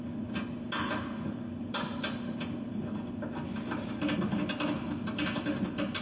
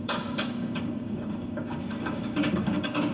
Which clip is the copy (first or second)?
second